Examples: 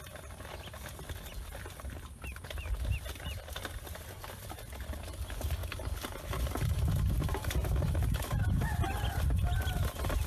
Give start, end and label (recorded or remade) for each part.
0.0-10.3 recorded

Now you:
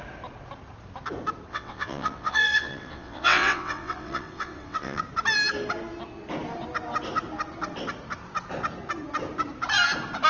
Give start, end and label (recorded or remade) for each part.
0.0-1.5 recorded; 1.5-5.0 remade; 5.0-10.3 recorded

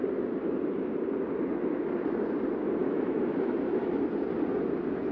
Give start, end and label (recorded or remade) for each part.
0.0-2.8 recorded; 2.8-3.9 remade; 3.9-5.1 recorded

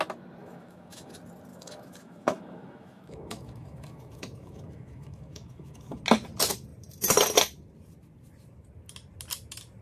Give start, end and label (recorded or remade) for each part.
0.0-0.4 recorded; 0.4-1.1 remade; 1.1-1.5 recorded; 1.5-6.0 remade; 6.0-9.8 recorded

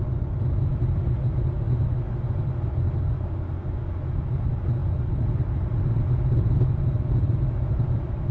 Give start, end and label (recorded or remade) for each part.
0.0-4.8 recorded; 4.8-8.3 remade

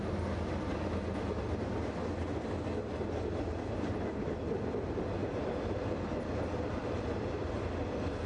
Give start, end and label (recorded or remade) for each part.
0.0-5.2 recorded; 5.2-5.8 remade; 5.8-6.8 recorded; 6.8-7.8 remade; 7.8-8.3 recorded

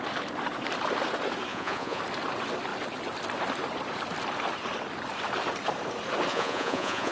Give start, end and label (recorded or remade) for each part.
0.0-1.5 recorded; 1.5-2.0 remade; 2.0-6.3 recorded; 6.3-7.1 remade